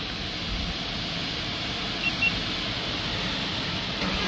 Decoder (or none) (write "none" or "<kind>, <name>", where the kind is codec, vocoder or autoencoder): none